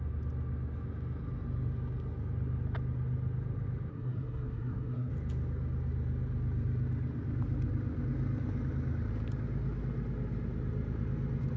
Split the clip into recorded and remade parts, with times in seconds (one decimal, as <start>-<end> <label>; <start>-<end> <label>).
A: 0.0-3.9 recorded; 3.9-5.1 remade; 5.1-11.6 recorded